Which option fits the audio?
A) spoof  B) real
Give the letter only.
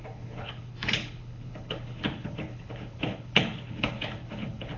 A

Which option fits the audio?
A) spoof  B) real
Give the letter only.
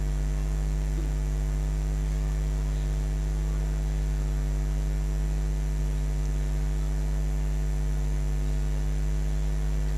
B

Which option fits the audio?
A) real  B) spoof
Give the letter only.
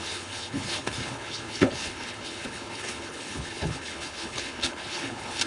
B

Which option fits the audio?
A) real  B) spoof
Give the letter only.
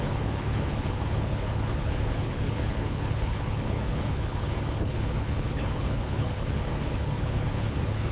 B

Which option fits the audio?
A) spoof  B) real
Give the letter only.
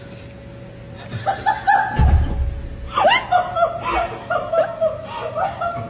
B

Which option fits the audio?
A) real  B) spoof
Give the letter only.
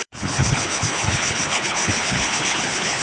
B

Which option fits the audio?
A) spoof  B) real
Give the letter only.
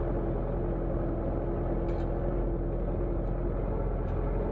B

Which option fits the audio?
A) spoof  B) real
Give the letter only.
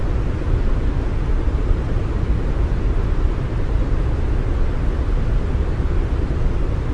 B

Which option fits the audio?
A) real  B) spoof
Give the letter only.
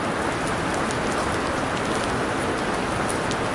A